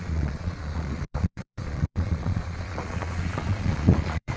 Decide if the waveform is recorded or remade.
remade